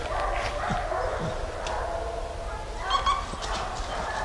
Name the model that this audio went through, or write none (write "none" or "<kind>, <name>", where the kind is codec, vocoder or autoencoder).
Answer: none